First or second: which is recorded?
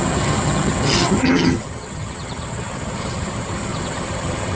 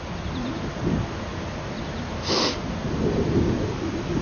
second